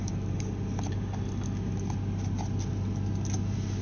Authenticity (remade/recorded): recorded